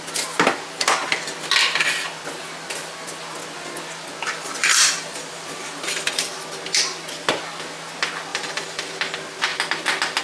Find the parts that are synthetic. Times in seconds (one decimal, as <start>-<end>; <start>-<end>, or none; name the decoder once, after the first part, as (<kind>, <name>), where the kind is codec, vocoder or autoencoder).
4.6-6.3 (vocoder, BigVGAN v2); 8.3-8.9